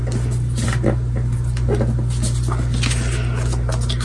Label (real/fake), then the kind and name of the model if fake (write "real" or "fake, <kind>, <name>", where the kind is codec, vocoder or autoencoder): real